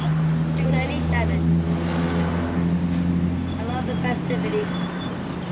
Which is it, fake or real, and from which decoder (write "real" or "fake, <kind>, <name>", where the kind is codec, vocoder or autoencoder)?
real